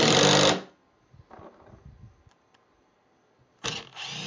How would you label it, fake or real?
real